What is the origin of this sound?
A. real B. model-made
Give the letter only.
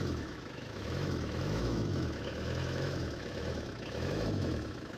B